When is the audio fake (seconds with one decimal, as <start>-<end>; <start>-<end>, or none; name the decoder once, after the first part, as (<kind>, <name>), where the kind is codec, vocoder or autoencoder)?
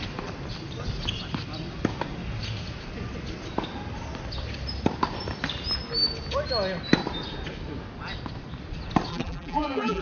9.1-10.0 (vocoder, BigVGAN v2)